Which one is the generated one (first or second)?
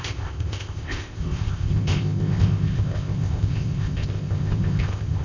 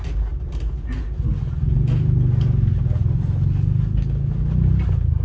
first